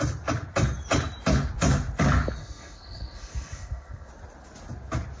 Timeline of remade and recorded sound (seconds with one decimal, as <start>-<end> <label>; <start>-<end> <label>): 0.0-2.4 recorded; 2.4-4.1 remade; 4.1-5.2 recorded

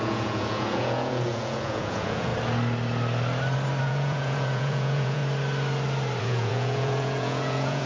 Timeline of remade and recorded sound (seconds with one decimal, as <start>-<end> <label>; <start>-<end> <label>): 0.0-2.3 remade; 2.3-3.8 recorded; 3.8-5.2 remade; 5.2-6.2 recorded; 6.2-7.9 remade

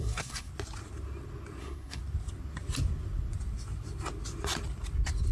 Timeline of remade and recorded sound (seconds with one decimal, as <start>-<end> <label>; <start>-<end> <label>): 0.0-0.5 remade; 0.5-1.6 recorded; 1.6-2.0 remade; 2.0-5.3 recorded

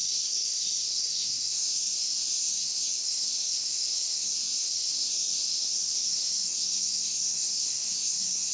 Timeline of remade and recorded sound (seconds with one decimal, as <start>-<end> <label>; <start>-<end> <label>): 0.0-8.5 remade

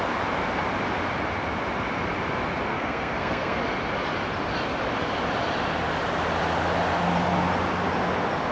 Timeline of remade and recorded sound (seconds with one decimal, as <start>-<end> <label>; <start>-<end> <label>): 0.0-2.7 recorded; 2.7-3.6 remade; 3.6-8.5 recorded

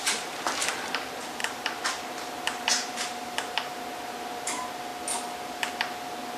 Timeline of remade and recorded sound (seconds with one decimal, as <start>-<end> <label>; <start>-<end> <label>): 0.0-2.7 recorded; 2.7-3.8 remade; 3.8-6.4 recorded

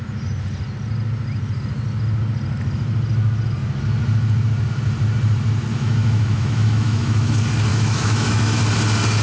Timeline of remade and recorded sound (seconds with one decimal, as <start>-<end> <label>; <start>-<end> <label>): 0.0-5.7 recorded; 5.7-7.3 remade; 7.3-7.7 recorded; 7.7-8.6 remade; 8.6-9.2 recorded